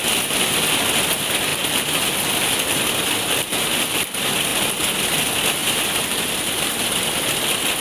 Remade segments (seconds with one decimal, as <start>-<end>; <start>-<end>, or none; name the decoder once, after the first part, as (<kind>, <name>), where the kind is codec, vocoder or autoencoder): 1.5-2.2 (vocoder, BigVGAN v2); 5.6-6.7